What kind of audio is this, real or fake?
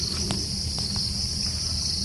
real